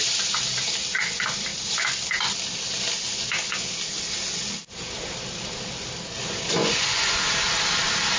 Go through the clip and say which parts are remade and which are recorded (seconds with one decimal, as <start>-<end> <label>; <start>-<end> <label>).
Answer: 0.0-6.6 recorded; 6.6-7.3 remade; 7.3-8.2 recorded